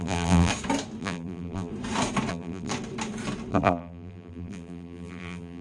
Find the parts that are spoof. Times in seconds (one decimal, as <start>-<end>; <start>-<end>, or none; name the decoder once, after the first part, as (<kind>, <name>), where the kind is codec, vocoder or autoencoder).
0.0-0.5 (vocoder, BigVGAN v2); 1.0-1.7; 2.3-2.7; 3.5-5.6